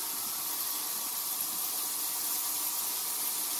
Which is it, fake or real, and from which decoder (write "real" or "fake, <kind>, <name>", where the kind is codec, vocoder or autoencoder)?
real